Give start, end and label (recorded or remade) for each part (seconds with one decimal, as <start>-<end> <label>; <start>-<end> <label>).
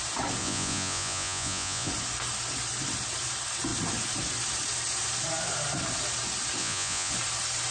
0.0-0.4 recorded; 0.4-1.9 remade; 1.9-6.6 recorded; 6.6-7.1 remade; 7.1-7.7 recorded